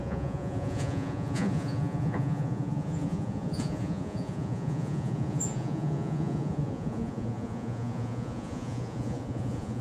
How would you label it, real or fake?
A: fake